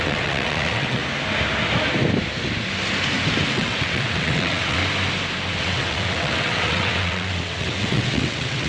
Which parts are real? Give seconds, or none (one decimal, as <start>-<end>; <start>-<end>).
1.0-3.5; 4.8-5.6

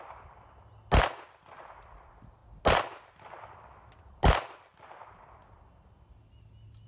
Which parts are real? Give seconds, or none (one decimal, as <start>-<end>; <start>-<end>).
0.0-6.9

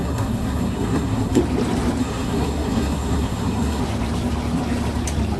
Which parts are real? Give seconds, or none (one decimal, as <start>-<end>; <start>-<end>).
1.4-2.0; 3.8-5.4

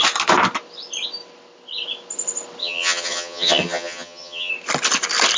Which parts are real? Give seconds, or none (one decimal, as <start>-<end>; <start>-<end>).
0.0-2.6; 4.5-5.4

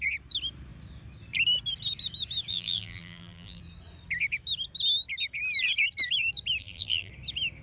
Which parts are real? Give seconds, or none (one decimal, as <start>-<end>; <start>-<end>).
0.0-2.5; 3.6-6.6; 7.1-7.6

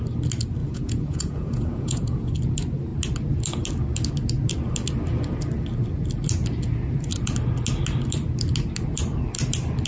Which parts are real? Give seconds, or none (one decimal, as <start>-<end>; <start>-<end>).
0.0-0.6; 2.3-9.9